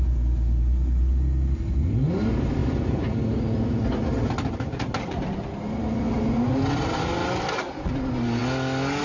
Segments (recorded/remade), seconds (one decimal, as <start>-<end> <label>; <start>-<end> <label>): 0.0-2.6 recorded; 2.6-6.0 remade; 6.0-9.0 recorded